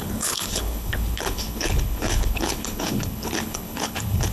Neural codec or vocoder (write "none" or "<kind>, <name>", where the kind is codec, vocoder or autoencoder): codec, HILCodec